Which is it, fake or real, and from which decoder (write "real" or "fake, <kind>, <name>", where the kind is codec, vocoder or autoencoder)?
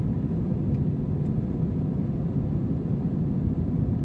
real